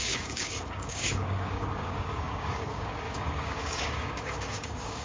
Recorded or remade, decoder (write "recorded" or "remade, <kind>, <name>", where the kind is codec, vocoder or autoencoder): remade, codec, DAC